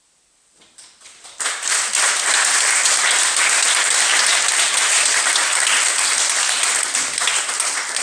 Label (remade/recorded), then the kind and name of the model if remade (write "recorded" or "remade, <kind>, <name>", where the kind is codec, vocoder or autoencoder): recorded